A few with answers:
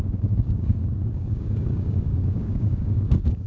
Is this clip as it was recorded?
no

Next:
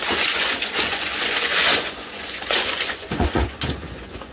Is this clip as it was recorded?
no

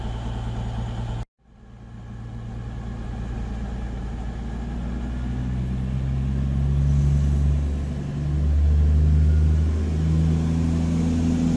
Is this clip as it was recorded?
yes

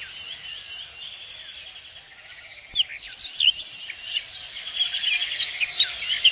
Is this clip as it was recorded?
yes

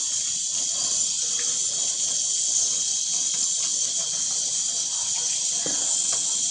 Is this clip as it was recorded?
yes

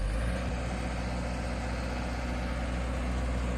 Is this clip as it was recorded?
yes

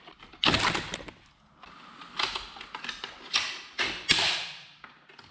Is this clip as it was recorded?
yes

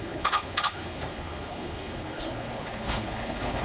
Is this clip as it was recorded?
no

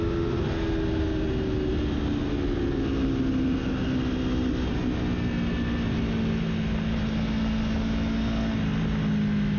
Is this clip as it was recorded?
yes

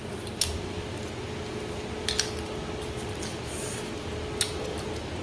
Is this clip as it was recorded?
yes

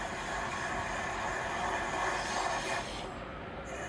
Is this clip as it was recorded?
yes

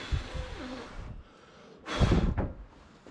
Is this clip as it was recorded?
yes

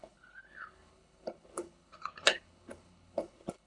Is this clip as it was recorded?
no